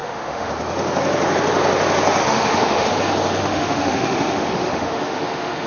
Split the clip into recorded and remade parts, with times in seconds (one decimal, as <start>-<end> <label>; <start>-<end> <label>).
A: 0.0-0.5 remade; 0.5-2.2 recorded; 2.2-2.9 remade; 2.9-3.4 recorded; 3.4-5.7 remade